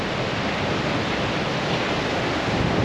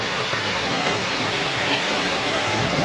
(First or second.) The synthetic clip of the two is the second